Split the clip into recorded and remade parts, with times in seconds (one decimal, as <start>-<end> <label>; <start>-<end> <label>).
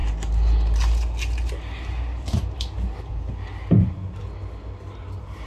0.0-5.5 recorded